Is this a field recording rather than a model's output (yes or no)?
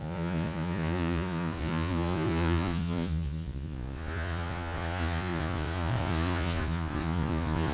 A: no